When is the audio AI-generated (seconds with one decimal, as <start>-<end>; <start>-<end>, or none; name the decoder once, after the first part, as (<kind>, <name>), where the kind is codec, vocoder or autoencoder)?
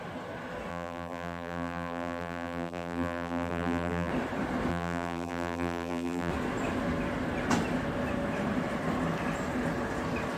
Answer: 0.7-4.1 (vocoder, BigVGAN v2); 4.7-6.3